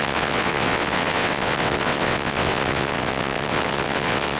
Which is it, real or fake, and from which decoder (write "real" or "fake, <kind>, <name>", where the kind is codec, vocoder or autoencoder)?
fake, vocoder, WaveNeXt